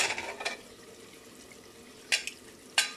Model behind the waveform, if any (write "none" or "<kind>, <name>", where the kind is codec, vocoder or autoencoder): none